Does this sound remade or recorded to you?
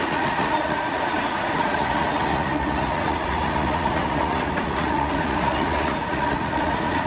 remade